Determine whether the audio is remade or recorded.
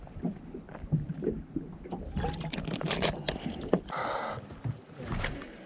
recorded